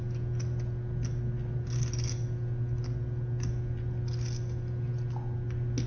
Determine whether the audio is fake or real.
real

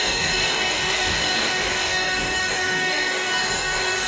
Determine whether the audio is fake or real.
fake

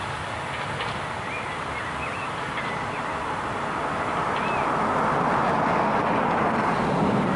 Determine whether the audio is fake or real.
real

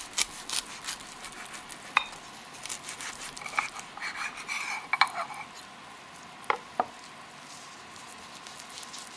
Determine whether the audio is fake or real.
real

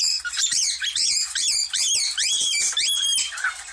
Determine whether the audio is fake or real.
real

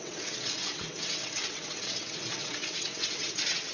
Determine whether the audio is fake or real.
fake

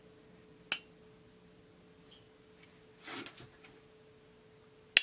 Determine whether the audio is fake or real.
real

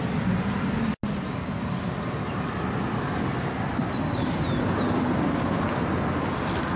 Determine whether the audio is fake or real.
real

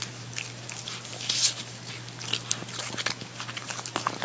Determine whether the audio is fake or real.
real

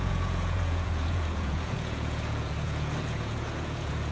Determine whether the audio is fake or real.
fake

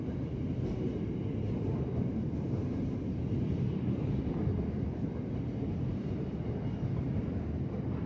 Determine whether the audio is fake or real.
real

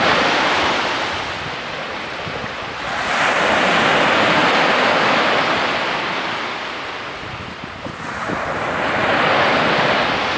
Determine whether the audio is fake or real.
fake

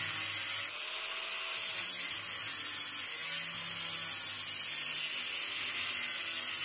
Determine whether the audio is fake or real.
real